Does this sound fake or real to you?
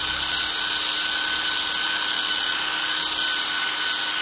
real